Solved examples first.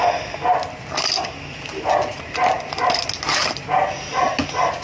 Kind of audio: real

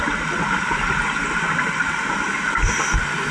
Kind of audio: real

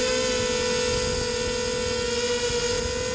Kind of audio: real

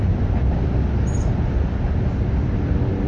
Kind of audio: real